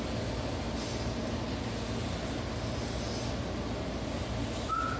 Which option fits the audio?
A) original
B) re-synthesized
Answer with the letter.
A